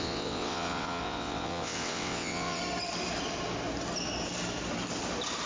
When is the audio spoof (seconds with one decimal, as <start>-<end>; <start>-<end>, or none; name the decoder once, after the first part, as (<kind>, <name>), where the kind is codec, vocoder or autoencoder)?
0.0-2.6 (vocoder, WaveNeXt)